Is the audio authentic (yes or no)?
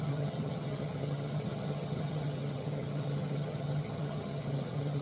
no